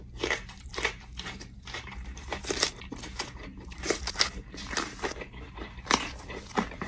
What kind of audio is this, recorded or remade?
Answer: remade